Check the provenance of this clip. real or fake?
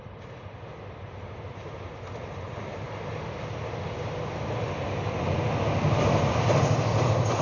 real